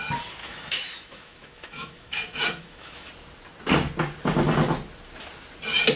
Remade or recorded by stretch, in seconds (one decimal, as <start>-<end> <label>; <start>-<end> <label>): 0.0-0.4 recorded; 0.4-3.1 remade; 3.1-6.0 recorded